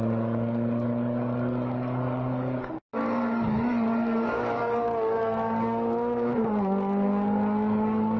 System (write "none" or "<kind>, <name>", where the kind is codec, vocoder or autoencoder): codec, DAC